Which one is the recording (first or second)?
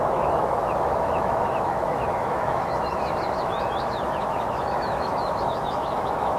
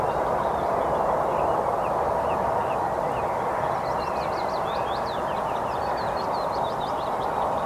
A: second